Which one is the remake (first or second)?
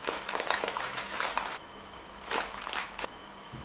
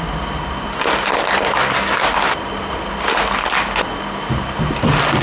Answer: first